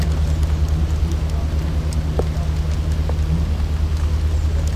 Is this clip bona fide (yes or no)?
yes